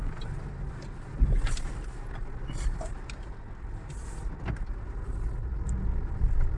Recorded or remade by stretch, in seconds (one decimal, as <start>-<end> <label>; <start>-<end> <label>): 0.0-6.6 recorded